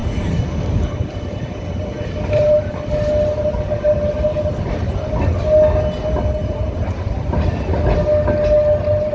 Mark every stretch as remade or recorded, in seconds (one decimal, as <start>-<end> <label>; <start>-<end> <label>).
0.0-2.6 remade; 2.6-6.4 recorded; 6.4-7.5 remade; 7.5-9.1 recorded